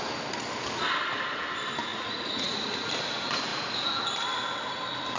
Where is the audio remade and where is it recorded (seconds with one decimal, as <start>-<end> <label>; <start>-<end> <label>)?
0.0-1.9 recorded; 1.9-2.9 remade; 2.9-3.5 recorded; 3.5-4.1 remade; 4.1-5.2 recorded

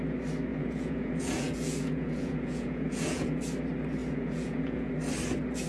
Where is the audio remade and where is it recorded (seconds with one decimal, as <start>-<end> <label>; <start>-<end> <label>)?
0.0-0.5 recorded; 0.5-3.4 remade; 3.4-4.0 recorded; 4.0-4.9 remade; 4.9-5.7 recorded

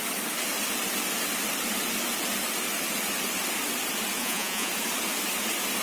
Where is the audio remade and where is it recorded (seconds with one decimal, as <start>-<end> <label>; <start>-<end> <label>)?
0.0-4.2 recorded; 4.2-4.7 remade; 4.7-5.8 recorded